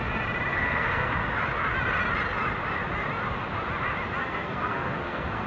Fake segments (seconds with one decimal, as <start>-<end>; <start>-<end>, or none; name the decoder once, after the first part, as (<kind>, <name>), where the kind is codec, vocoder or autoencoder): 0.5-1.1 (codec, SNAC); 4.2-5.5